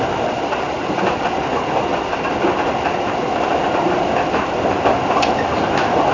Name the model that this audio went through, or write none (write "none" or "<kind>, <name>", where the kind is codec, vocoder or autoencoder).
none